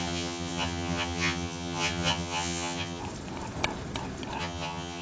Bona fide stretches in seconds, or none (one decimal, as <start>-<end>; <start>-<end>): 3.0-4.4

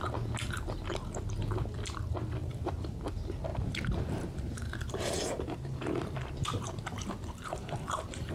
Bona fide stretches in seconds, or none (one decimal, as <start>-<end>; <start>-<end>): 0.0-2.4; 3.0-3.5

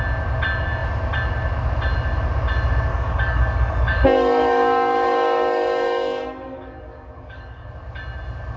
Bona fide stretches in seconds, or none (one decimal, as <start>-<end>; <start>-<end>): 0.0-2.9; 7.7-8.6

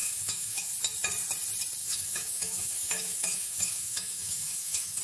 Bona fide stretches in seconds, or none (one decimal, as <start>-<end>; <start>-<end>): 0.7-1.8

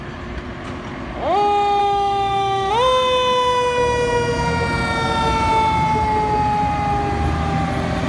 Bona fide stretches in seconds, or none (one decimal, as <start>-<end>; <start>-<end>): 0.0-1.8; 2.7-8.1

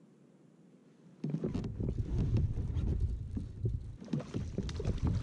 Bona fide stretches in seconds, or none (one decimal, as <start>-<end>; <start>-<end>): 0.0-5.2

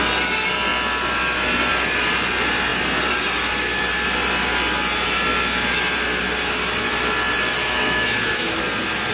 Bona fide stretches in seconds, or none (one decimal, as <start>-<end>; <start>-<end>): 0.0-7.6; 8.6-9.1